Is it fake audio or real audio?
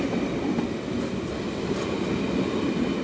real